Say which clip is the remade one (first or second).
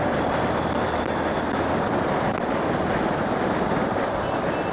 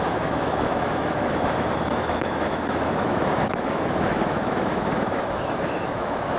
second